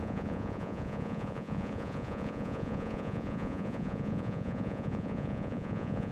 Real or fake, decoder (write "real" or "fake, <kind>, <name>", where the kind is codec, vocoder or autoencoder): fake, vocoder, Vocos